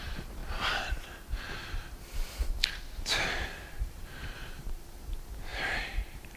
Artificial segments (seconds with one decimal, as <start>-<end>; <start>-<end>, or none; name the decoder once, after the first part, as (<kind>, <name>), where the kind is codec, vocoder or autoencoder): 0.0-0.4 (vocoder, BigVGAN v2); 3.7-6.4